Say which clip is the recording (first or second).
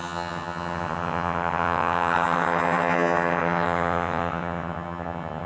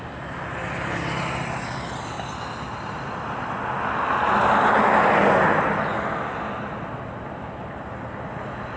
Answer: second